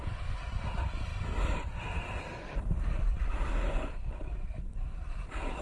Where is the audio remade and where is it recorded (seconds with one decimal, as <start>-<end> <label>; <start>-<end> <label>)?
0.0-5.6 recorded